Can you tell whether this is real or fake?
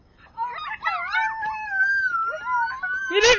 real